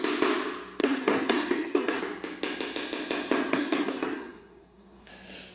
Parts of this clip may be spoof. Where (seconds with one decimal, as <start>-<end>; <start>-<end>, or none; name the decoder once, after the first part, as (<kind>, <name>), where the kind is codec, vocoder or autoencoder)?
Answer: 0.8-2.0 (codec, SNAC); 3.5-5.1